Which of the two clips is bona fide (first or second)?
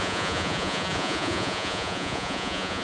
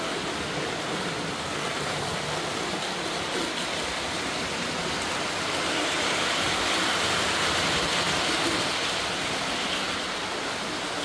second